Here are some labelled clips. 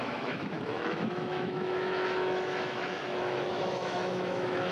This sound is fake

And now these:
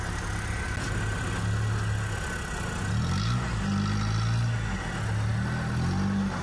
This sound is real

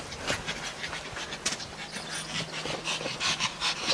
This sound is real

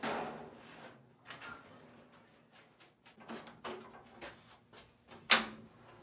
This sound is real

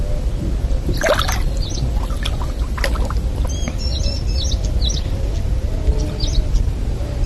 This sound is real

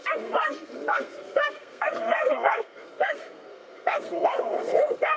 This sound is fake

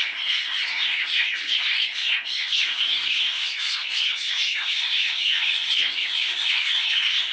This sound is fake